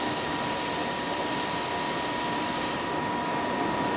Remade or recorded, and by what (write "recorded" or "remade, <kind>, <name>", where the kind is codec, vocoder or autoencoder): recorded